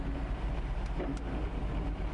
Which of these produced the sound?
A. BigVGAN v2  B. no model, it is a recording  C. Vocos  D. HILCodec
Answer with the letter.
B